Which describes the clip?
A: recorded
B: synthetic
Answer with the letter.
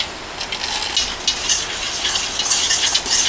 A